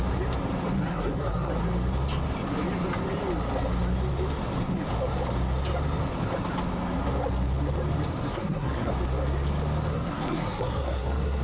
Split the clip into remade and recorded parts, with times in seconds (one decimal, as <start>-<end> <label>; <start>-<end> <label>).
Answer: 0.0-0.9 recorded; 0.9-1.5 remade; 1.5-8.3 recorded; 8.3-8.9 remade; 8.9-9.9 recorded; 9.9-11.4 remade